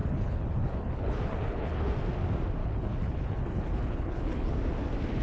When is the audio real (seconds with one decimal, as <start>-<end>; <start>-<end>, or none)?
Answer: 1.9-2.6; 4.5-5.2